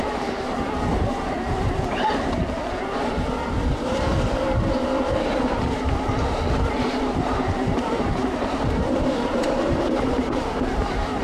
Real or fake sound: fake